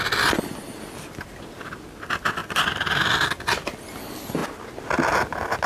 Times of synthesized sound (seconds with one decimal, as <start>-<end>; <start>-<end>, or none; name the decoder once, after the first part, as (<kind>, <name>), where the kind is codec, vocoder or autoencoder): none